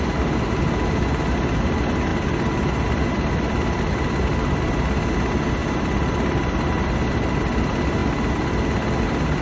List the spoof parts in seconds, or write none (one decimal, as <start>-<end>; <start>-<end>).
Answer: none